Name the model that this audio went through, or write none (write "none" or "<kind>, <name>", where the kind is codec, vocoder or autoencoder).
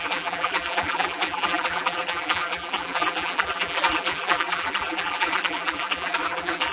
vocoder, BigVGAN v2